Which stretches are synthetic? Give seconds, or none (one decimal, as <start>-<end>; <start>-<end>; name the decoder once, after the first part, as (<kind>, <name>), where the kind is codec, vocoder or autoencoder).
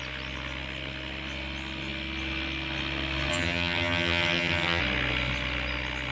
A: 3.3-4.8 (vocoder, HiFi-GAN)